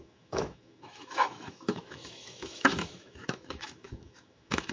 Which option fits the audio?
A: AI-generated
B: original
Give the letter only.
A